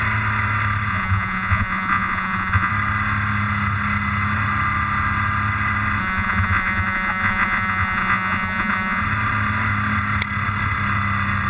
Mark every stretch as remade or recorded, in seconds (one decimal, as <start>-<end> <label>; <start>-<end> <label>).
0.0-0.9 recorded; 0.9-2.7 remade; 2.7-6.0 recorded; 6.0-9.0 remade; 9.0-11.5 recorded